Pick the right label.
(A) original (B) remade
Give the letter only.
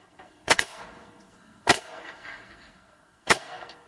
B